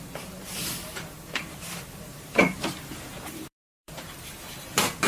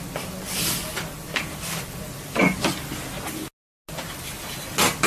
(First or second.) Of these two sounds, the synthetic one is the first